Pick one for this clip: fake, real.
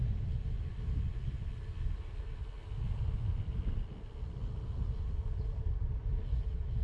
real